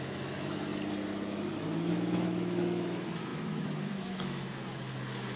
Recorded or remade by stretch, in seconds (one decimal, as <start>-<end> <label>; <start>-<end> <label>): 0.0-0.7 remade; 0.7-1.9 recorded; 1.9-5.4 remade